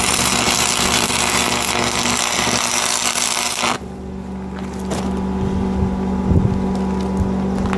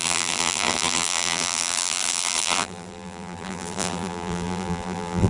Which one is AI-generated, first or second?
second